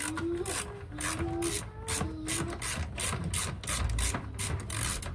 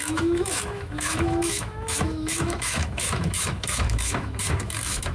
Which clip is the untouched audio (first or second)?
first